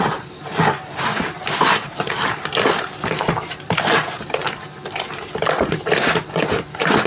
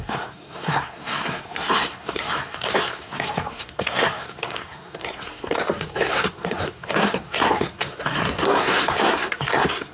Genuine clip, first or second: first